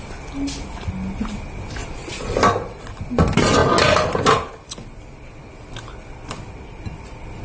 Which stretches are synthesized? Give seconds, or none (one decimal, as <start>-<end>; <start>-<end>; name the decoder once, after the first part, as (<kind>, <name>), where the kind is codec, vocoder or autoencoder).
1.8-2.3 (vocoder, Vocos)